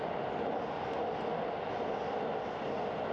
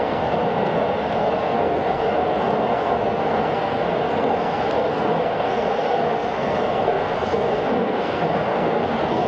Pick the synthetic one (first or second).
second